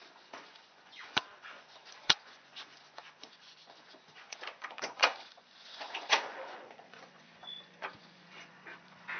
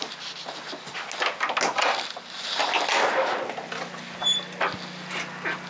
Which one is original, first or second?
second